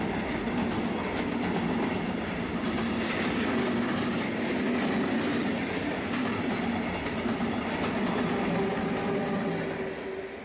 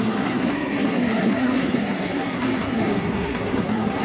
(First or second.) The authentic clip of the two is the first